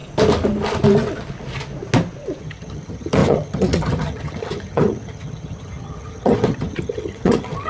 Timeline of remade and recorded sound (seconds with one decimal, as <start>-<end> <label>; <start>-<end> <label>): 0.0-2.4 recorded; 2.4-7.7 remade